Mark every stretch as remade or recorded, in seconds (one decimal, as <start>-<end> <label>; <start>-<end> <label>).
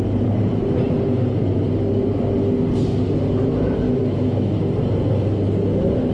0.0-4.0 recorded; 4.0-4.6 remade; 4.6-6.1 recorded